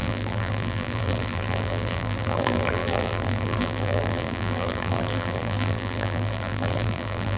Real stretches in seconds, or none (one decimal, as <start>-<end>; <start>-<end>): none